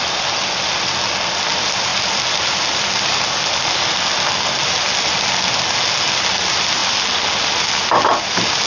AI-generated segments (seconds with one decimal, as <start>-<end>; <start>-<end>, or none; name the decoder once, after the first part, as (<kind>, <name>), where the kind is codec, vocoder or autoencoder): none